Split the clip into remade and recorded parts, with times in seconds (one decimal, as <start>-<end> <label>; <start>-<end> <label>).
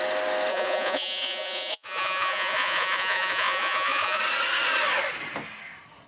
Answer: 0.0-0.5 recorded; 0.5-4.2 remade; 4.2-6.1 recorded